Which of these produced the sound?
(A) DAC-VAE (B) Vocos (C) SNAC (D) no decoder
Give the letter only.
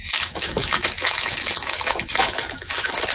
A